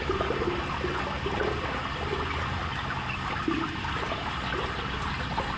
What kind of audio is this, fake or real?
real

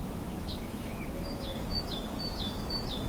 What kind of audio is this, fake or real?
fake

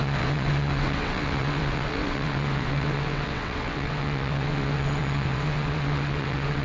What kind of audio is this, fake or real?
fake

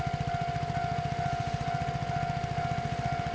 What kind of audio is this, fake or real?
real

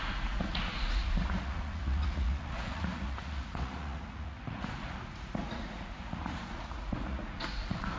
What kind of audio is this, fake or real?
fake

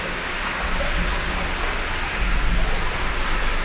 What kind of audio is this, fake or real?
real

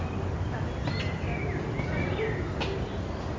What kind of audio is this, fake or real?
real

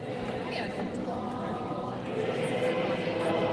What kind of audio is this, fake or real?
real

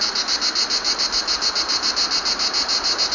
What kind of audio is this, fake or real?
real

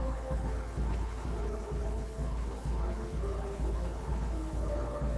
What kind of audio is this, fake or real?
fake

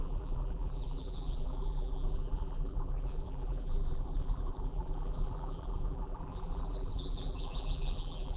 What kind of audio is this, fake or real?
fake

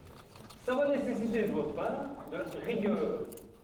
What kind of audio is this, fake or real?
fake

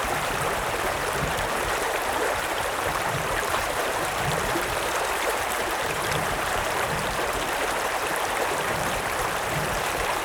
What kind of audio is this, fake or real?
fake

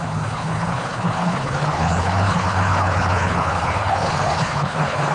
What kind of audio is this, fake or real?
fake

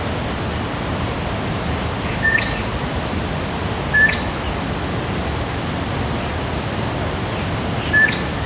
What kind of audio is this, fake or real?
real